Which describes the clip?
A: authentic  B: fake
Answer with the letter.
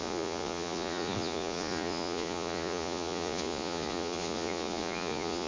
B